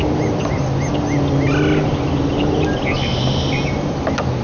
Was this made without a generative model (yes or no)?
yes